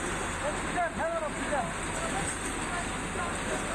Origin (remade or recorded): recorded